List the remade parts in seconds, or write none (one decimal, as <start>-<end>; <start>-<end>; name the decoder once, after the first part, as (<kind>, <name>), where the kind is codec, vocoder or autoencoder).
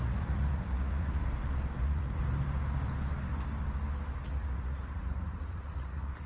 0.0-1.2 (vocoder, Vocos); 1.8-2.2; 4.2-6.3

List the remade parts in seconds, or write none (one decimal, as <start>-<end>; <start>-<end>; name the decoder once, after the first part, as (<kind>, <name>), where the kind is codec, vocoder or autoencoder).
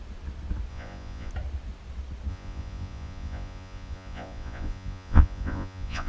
0.7-1.3 (vocoder, Vocos); 2.3-6.1